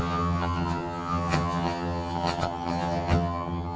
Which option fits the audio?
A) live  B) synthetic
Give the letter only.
B